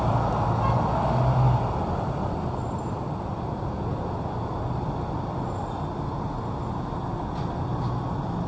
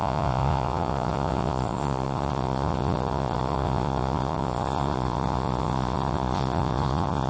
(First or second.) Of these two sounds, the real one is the first